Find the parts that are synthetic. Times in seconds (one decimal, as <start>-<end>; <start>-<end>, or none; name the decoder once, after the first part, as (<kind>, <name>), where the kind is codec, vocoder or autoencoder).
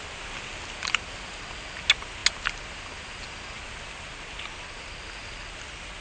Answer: none